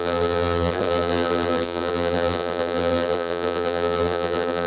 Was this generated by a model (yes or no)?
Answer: yes